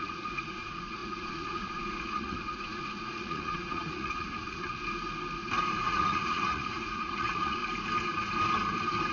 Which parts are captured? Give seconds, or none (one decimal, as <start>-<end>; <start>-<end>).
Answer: 4.8-5.8; 7.6-9.1